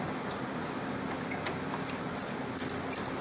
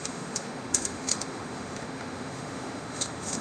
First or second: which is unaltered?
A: first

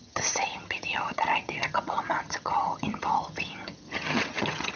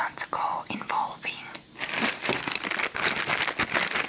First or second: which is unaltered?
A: second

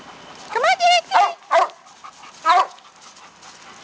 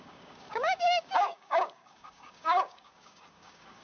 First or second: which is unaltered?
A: first